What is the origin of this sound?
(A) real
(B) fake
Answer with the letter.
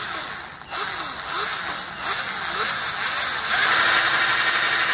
A